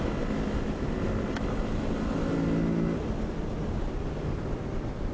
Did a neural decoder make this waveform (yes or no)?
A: no